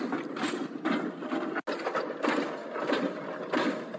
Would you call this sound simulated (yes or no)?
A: no